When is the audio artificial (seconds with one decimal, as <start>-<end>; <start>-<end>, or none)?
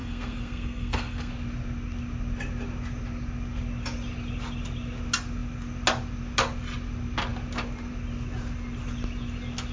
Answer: 0.0-1.3